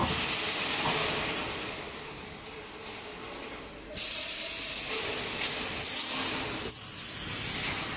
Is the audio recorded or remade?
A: recorded